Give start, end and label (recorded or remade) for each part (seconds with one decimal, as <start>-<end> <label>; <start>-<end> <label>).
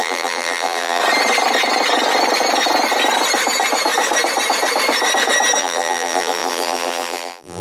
0.0-1.0 remade; 1.0-5.6 recorded; 5.6-7.6 remade